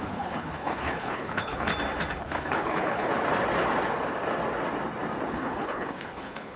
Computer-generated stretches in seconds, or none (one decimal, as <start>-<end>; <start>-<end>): 0.0-1.7; 2.2-3.1; 5.3-6.6